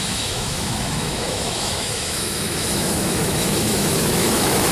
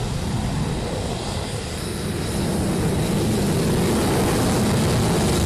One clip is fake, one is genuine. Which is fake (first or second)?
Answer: first